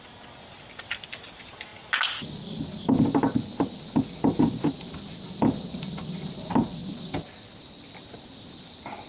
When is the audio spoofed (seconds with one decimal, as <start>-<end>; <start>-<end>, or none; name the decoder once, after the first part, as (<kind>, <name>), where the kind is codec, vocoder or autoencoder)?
none